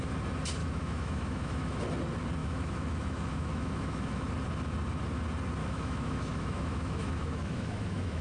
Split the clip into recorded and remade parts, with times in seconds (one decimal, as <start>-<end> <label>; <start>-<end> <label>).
0.0-0.6 recorded; 0.6-1.8 remade; 1.8-2.4 recorded; 2.4-4.3 remade; 4.3-5.6 recorded; 5.6-8.2 remade